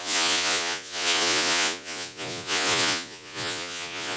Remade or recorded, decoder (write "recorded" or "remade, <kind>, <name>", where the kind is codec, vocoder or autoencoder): remade, vocoder, Vocos